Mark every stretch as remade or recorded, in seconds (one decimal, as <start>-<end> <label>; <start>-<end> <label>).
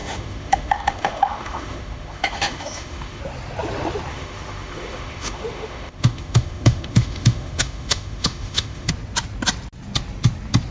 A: 0.0-3.2 remade; 3.2-4.1 recorded; 4.1-8.9 remade; 8.9-10.7 recorded